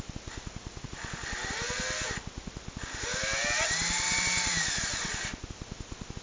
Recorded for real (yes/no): yes